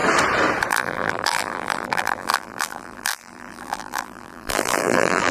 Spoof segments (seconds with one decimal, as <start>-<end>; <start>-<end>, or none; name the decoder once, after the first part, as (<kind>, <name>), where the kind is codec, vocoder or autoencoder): 0.7-5.3 (vocoder, BigVGAN v2)